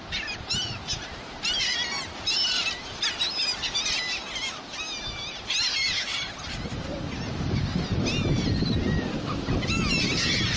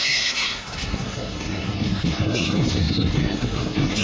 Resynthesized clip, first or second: second